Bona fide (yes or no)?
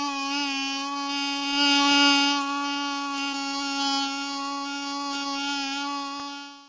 yes